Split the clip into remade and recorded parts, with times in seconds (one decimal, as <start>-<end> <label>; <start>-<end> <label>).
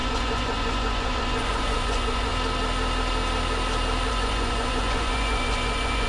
0.0-2.3 remade; 2.3-4.1 recorded; 4.1-6.1 remade